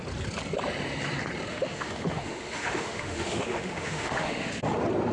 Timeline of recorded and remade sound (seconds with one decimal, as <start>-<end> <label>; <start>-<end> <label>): 0.0-1.5 recorded; 1.5-4.6 remade; 4.6-5.1 recorded